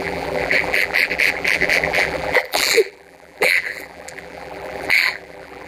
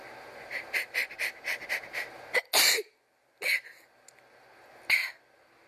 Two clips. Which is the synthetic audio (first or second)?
first